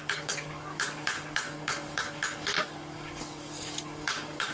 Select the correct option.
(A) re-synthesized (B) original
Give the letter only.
A